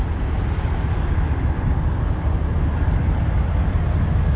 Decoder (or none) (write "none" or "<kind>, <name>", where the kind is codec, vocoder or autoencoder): none